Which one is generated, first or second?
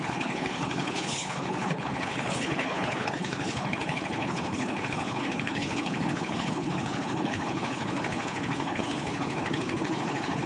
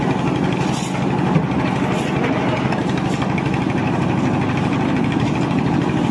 first